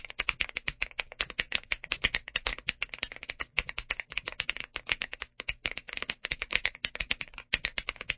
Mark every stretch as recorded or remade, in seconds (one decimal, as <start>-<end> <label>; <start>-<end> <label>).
0.0-2.5 remade; 2.5-3.4 recorded; 3.4-8.2 remade